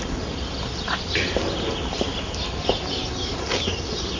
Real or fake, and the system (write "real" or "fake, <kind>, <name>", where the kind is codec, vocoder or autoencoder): real